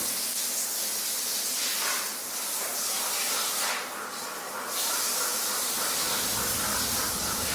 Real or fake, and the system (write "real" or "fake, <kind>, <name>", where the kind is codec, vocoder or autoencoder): real